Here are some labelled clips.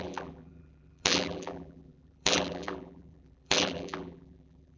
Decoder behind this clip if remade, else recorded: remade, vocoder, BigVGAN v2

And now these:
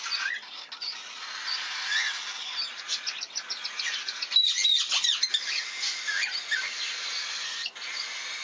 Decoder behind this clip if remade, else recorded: recorded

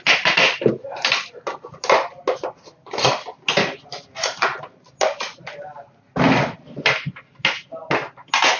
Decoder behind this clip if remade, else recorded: recorded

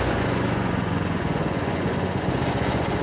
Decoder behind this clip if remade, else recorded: remade, vocoder, Vocos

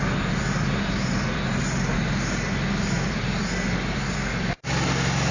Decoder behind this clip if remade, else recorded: recorded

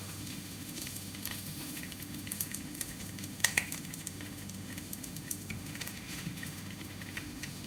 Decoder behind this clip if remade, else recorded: remade, autoencoder, DAC-VAE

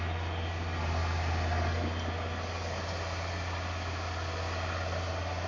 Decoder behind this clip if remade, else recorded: recorded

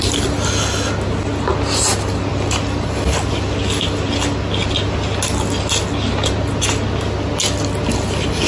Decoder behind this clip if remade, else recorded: recorded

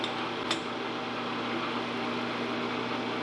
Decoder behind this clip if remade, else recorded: recorded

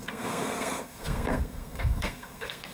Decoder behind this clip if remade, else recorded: remade, codec, SNAC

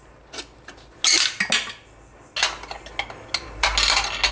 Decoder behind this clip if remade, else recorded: recorded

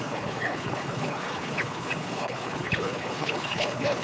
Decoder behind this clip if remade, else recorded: remade, codec, HILCodec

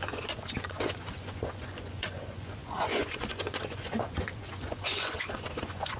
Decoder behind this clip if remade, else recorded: remade, vocoder, Vocos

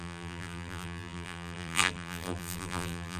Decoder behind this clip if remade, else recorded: remade, vocoder, BigVGAN v2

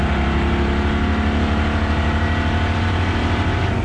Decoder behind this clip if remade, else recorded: recorded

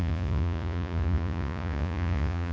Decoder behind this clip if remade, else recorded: remade, vocoder, Vocos